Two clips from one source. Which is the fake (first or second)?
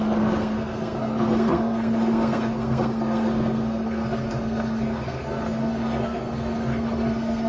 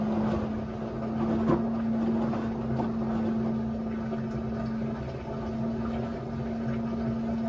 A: first